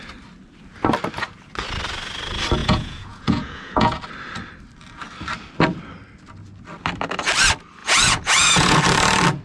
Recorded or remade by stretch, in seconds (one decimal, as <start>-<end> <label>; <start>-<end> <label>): 0.0-2.6 recorded; 2.6-4.0 remade; 4.0-7.8 recorded; 7.8-8.8 remade; 8.8-9.4 recorded